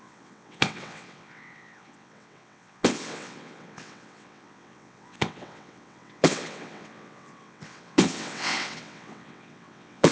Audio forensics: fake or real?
fake